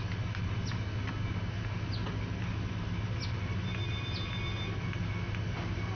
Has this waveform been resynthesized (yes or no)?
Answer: no